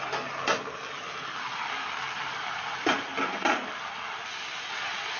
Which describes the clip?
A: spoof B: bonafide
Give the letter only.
B